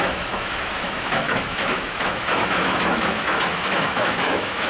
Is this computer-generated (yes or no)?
yes